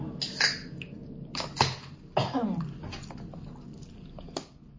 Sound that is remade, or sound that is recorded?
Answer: recorded